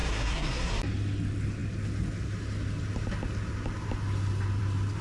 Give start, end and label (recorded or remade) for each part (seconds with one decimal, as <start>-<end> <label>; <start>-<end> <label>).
0.0-0.7 remade; 0.7-5.0 recorded